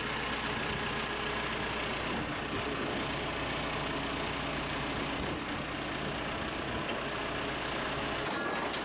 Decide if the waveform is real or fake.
real